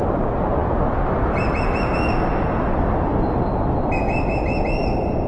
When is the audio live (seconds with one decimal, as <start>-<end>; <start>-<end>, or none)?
0.0-5.3